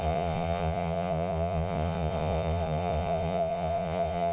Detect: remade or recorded remade